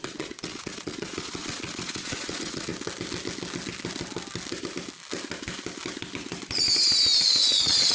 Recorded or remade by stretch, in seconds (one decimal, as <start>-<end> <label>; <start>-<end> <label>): 0.0-2.7 remade; 2.7-7.2 recorded; 7.2-7.9 remade